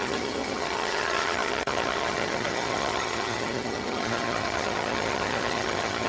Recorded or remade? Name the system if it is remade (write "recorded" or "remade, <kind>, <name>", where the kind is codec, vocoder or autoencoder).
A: remade, vocoder, HiFi-GAN